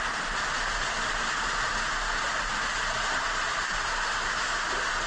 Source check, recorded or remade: recorded